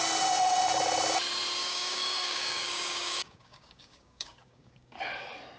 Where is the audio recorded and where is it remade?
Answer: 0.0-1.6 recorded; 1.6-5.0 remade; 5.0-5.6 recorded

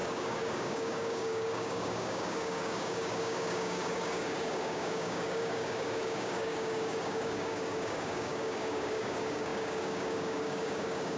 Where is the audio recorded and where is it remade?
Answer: 0.0-11.2 remade

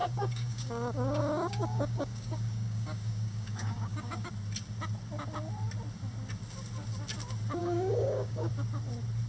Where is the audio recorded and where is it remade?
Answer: 0.0-4.3 remade; 4.3-7.6 recorded; 7.6-8.5 remade; 8.5-9.3 recorded

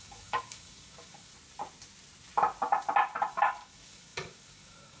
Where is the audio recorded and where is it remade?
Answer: 0.0-1.3 remade; 1.3-3.3 recorded; 3.3-5.0 remade

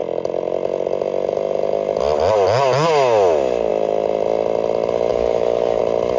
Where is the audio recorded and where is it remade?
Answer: 0.0-5.1 recorded; 5.1-5.8 remade; 5.8-6.2 recorded

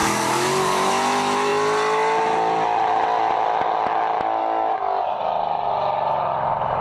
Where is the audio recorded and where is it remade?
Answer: 0.0-0.9 remade; 0.9-4.4 recorded; 4.4-5.2 remade; 5.2-6.8 recorded

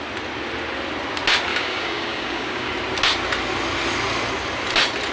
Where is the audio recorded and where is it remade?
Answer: 0.0-1.5 recorded; 1.5-2.7 remade; 2.7-5.1 recorded

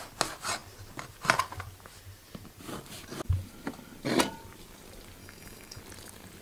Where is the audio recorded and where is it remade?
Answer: 0.0-5.2 recorded; 5.2-5.8 remade; 5.8-6.4 recorded